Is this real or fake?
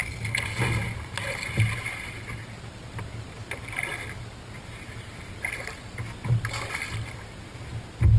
real